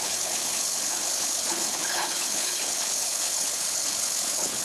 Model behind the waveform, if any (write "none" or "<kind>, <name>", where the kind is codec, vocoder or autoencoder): codec, HILCodec